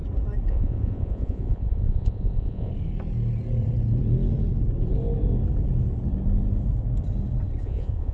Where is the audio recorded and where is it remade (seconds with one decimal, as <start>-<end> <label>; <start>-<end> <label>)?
0.0-0.5 recorded; 0.5-2.7 remade; 2.7-7.6 recorded; 7.6-8.1 remade